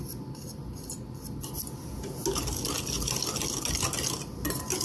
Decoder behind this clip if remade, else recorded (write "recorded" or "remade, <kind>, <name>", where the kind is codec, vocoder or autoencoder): recorded